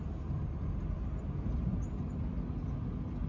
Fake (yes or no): no